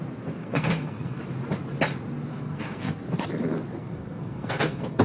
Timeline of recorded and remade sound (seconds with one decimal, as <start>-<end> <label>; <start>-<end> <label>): 0.0-0.4 recorded; 0.4-1.2 remade; 1.2-2.3 recorded; 2.3-3.0 remade; 3.0-3.8 recorded; 3.8-5.0 remade